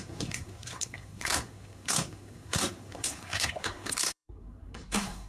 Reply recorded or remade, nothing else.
remade